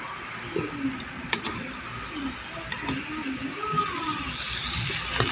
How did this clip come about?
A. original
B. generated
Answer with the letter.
A